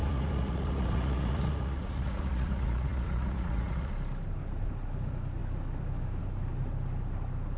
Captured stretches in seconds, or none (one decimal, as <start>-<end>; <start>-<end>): 3.9-7.6